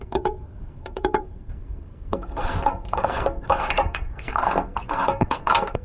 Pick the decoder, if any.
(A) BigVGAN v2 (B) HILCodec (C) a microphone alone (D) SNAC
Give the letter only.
D